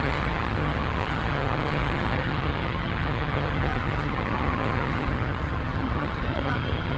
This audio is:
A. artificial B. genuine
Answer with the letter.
A